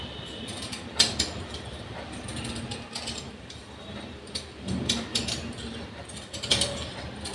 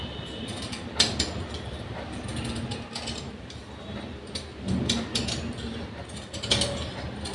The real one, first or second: second